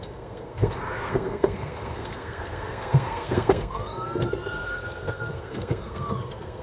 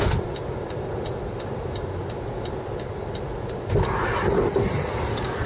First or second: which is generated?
first